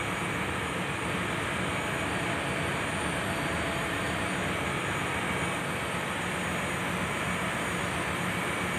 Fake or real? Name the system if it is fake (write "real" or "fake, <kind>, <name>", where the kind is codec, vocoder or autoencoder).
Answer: real